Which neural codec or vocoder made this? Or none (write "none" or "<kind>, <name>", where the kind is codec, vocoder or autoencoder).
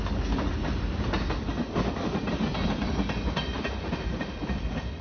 none